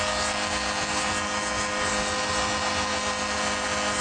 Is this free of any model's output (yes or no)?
yes